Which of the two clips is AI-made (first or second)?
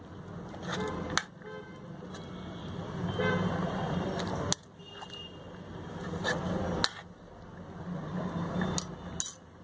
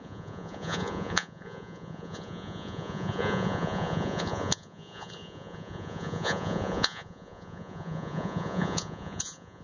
second